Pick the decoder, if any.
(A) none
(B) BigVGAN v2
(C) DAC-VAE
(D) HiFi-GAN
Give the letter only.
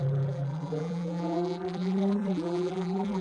B